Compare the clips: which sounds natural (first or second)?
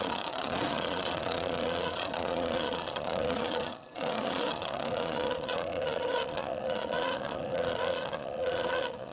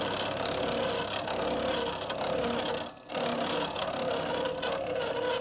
second